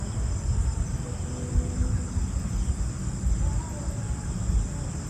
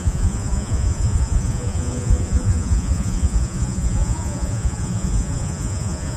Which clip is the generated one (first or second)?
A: second